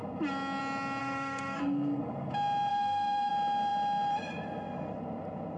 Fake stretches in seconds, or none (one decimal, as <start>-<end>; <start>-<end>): 1.0-2.0; 2.7-3.3